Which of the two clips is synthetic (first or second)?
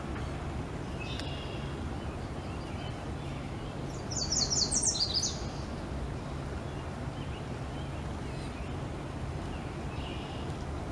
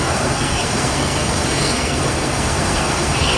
second